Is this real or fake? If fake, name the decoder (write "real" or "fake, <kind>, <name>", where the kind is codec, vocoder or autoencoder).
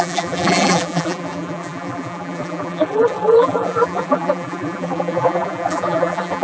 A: fake, vocoder, BigVGAN v2